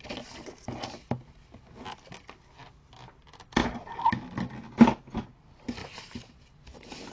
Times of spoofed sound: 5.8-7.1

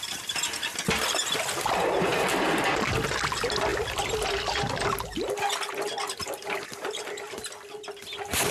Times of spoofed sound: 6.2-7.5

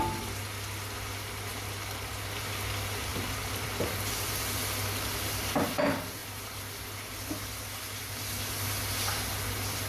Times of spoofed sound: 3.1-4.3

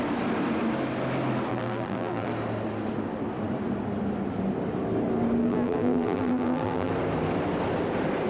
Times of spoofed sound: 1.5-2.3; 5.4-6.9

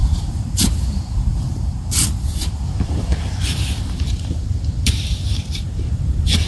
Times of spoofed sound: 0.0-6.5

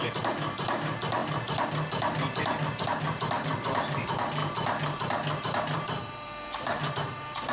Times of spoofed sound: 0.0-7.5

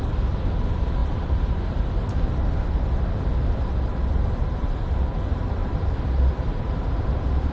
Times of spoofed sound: 1.0-1.9; 5.6-7.1